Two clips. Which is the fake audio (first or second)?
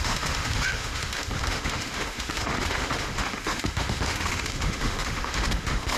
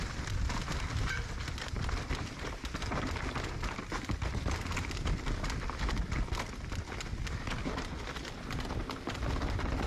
first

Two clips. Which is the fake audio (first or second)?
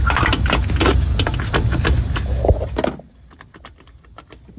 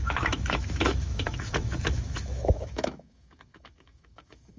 second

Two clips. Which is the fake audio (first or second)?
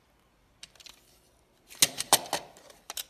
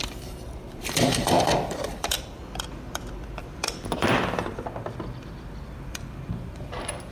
second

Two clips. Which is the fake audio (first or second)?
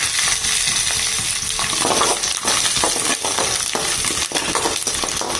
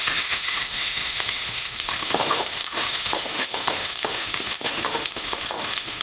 second